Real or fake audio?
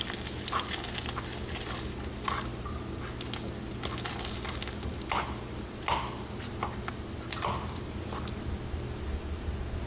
real